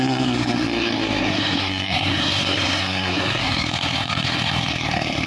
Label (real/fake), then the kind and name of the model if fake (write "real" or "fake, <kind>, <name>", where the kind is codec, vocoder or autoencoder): fake, codec, SNAC